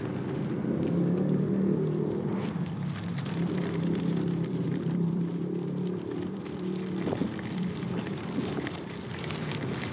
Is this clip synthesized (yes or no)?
yes